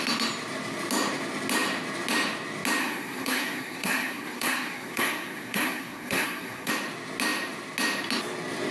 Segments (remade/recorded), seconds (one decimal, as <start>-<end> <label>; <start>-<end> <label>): 0.0-2.8 recorded; 2.8-6.7 remade; 6.7-8.7 recorded